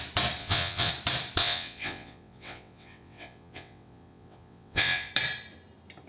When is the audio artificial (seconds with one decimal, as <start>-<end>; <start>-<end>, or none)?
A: 0.4-0.9; 1.4-5.1

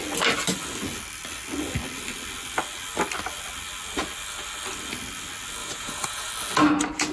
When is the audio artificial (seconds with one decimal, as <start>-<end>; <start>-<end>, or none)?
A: 5.6-6.3

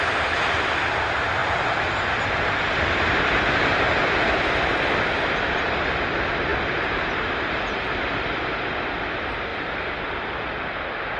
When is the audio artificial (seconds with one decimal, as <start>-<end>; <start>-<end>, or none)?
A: 1.4-5.3

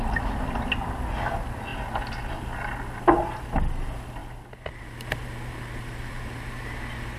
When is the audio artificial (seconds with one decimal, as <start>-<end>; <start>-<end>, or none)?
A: none

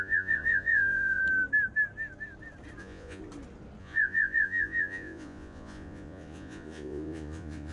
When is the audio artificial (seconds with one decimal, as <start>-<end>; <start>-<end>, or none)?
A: 0.0-1.2; 2.8-3.2; 3.8-7.7

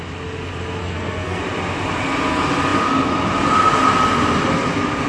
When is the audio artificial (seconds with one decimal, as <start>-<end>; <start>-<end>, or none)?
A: 0.8-1.4

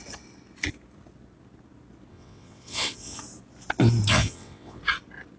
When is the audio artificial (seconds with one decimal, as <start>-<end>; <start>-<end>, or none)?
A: 2.1-3.2; 4.1-4.8